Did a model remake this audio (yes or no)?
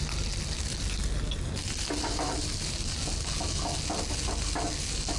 no